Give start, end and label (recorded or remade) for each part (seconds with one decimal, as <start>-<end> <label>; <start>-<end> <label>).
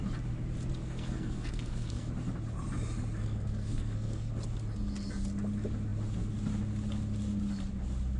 0.0-0.8 recorded; 0.8-2.1 remade; 2.1-3.2 recorded; 3.2-4.3 remade; 4.3-8.2 recorded